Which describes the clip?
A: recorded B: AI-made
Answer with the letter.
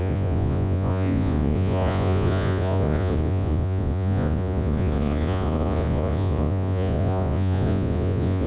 B